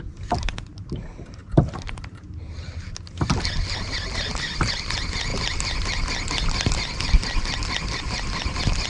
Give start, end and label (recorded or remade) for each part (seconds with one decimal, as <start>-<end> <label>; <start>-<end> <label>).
0.0-8.9 recorded